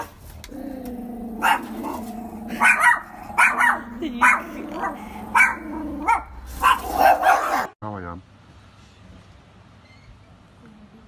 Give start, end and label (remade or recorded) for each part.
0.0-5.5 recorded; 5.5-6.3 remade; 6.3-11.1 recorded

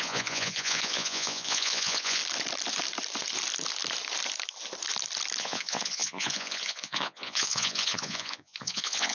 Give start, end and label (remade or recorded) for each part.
0.0-2.2 remade; 2.2-5.4 recorded; 5.4-9.1 remade

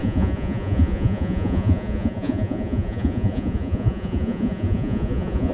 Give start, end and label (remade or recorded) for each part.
0.0-5.5 remade